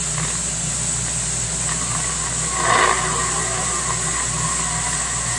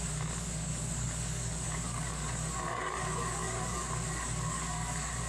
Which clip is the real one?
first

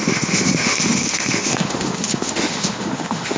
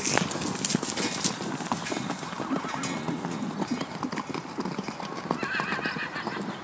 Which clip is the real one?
second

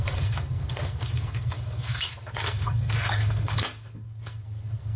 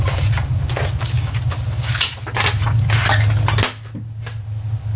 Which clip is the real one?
second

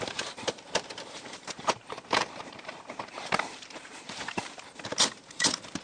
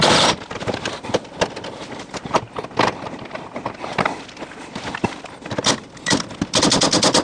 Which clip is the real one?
second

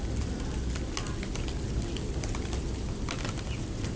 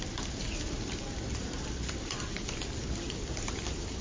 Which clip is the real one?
first